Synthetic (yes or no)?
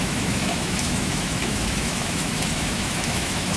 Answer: yes